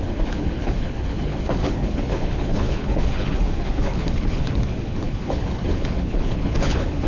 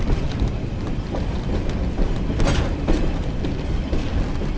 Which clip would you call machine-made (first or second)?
first